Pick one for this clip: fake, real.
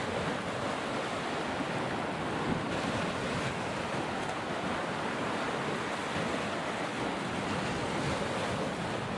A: real